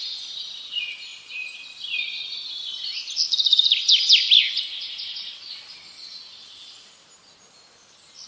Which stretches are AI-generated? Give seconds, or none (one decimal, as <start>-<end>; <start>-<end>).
none